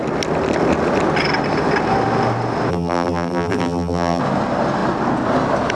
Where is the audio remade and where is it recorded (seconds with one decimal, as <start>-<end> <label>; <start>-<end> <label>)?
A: 0.0-2.7 recorded; 2.7-4.2 remade; 4.2-5.7 recorded